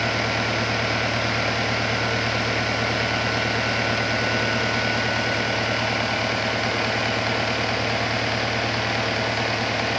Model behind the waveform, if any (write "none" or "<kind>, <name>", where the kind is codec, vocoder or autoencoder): none